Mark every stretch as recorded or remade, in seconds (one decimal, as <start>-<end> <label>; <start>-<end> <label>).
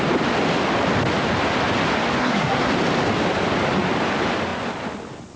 0.0-2.2 recorded; 2.2-2.7 remade; 2.7-5.4 recorded